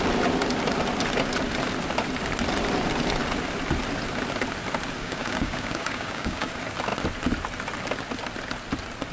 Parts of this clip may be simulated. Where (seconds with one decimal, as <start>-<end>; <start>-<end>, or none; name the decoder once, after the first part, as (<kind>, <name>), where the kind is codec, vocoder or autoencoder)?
5.0-6.5 (codec, DAC)